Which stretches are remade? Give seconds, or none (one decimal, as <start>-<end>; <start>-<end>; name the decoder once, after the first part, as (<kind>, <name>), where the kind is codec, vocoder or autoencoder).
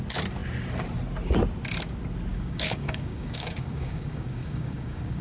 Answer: 2.3-5.2 (codec, DAC)